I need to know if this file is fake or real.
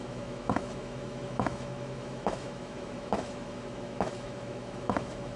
fake